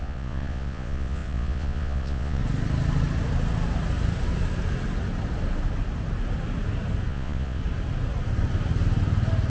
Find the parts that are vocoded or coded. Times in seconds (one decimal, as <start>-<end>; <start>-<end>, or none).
0.0-2.4; 7.1-7.6